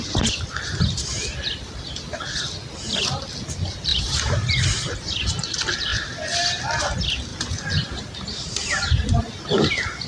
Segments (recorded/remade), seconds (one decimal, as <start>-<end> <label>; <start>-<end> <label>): 0.0-3.9 recorded; 3.9-4.9 remade; 4.9-7.3 recorded; 7.3-9.2 remade; 9.2-10.1 recorded